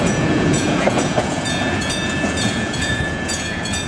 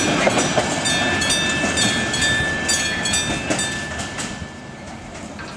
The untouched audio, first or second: second